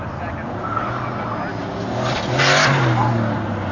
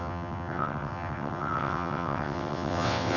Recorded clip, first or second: first